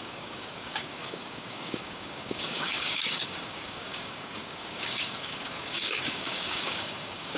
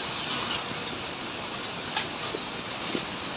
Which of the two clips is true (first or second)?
second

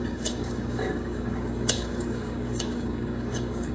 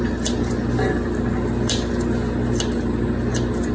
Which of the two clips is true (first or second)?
second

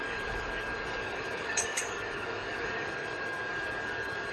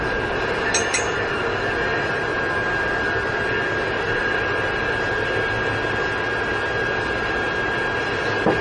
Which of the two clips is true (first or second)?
second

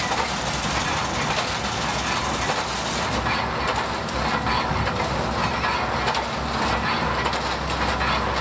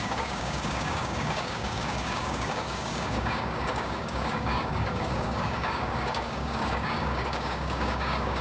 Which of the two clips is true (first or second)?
first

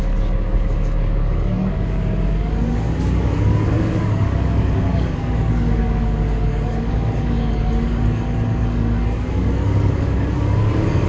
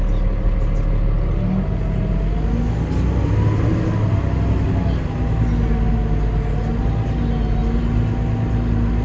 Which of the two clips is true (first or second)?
second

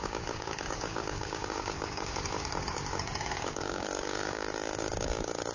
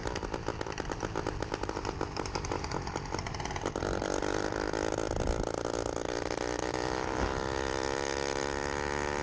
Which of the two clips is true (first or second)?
second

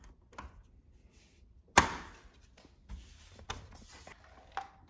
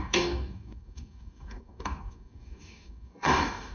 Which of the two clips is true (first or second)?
first